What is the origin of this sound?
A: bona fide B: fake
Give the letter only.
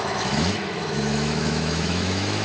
B